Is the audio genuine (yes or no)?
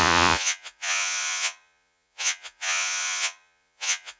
no